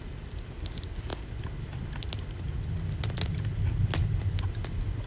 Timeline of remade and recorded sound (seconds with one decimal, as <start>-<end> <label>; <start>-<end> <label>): 0.0-5.1 recorded

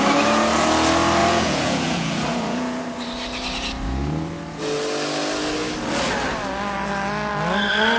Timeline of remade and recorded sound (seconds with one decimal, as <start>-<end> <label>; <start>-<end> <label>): 0.0-1.2 recorded; 1.2-2.8 remade; 2.8-8.0 recorded

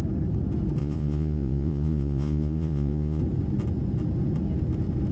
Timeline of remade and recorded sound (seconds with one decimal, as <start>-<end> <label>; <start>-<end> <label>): 0.0-0.8 recorded; 0.8-3.2 remade; 3.2-5.1 recorded

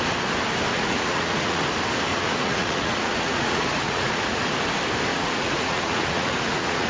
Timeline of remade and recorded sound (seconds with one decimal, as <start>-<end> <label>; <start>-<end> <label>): 0.0-0.7 recorded; 0.7-1.6 remade; 1.6-2.1 recorded; 2.1-4.4 remade; 4.4-5.1 recorded; 5.1-6.9 remade